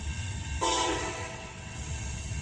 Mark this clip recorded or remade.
remade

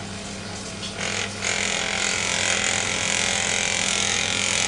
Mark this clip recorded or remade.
recorded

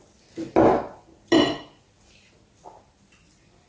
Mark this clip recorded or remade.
recorded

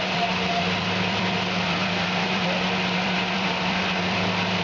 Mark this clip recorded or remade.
remade